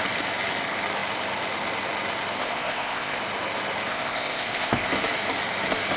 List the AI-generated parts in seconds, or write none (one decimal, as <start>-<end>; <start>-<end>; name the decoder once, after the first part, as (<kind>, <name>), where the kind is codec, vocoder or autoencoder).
2.4-3.2 (codec, ZipCodec); 3.9-4.9